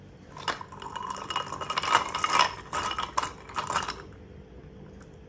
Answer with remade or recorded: recorded